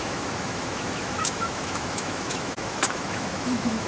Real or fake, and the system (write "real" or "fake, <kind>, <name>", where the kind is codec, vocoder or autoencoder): fake, autoencoder, DAC-VAE